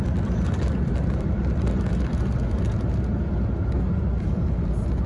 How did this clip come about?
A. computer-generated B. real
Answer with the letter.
B